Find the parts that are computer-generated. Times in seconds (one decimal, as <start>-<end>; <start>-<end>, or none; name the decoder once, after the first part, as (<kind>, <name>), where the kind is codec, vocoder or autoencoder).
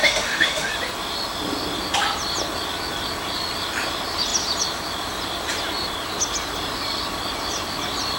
0.0-0.7 (autoencoder, DAC-VAE)